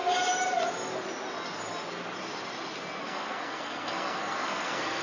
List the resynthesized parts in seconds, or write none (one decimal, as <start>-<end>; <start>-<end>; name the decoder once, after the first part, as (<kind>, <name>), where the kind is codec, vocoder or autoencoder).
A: 3.0-5.0 (codec, SNAC)